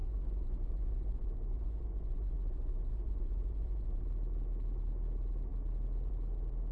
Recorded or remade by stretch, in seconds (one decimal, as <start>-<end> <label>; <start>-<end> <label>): 0.0-4.0 remade; 4.0-6.7 recorded